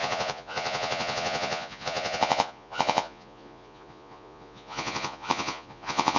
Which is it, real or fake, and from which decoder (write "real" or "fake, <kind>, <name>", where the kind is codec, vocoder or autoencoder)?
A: fake, vocoder, Vocos